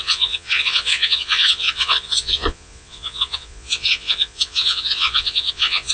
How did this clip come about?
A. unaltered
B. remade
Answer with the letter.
B